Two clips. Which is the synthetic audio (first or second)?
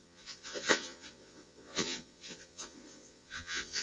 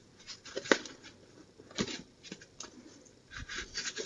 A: first